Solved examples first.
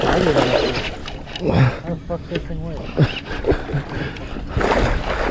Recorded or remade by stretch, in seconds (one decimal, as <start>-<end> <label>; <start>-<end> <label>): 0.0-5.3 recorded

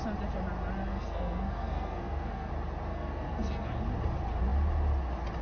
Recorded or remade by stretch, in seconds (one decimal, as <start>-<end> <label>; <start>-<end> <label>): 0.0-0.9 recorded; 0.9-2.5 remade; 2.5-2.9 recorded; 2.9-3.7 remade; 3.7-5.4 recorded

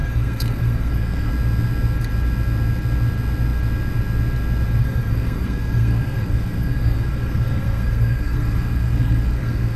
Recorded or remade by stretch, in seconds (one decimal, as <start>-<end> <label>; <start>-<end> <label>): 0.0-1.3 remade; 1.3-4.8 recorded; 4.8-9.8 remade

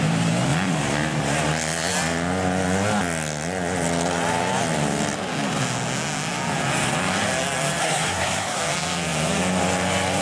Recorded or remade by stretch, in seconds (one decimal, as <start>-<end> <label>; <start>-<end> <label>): 0.0-7.8 recorded; 7.8-8.6 remade; 8.6-10.2 recorded